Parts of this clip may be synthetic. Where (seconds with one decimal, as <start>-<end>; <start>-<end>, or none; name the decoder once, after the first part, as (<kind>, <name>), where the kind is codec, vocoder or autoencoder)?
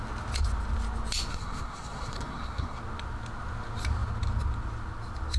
1.3-2.8 (codec, SNAC)